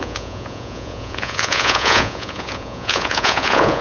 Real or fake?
fake